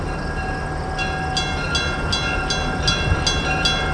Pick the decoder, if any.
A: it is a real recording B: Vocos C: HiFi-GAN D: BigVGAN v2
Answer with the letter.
A